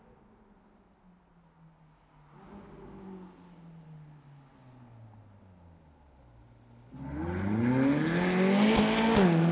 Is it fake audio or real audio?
real